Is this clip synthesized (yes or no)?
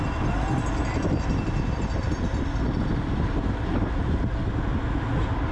no